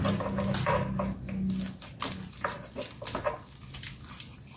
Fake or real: real